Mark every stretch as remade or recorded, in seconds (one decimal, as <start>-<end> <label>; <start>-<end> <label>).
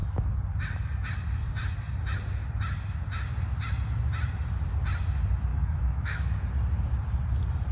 0.0-5.5 recorded; 5.5-6.3 remade; 6.3-7.7 recorded